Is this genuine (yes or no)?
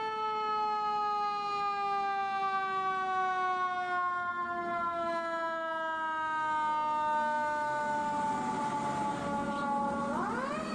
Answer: yes